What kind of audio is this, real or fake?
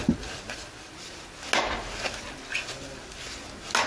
real